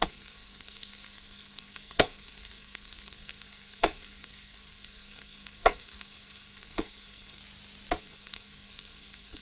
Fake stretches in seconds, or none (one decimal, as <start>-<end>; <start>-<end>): 0.0-7.4; 8.0-9.4